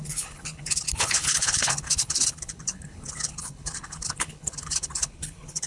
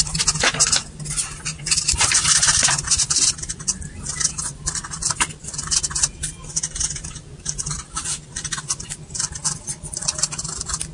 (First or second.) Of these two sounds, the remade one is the first